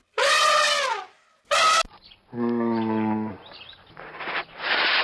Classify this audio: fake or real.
real